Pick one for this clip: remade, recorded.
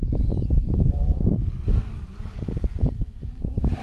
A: remade